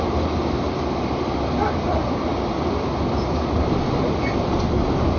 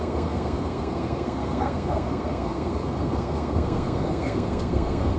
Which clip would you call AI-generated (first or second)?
second